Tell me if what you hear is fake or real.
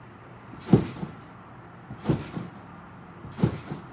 real